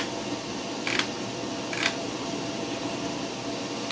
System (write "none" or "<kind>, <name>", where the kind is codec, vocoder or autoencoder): none